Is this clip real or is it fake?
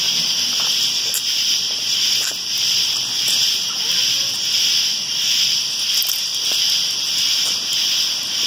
real